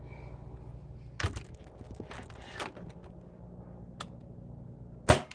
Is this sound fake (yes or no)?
no